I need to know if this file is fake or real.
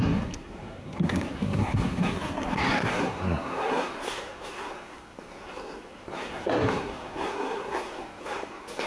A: fake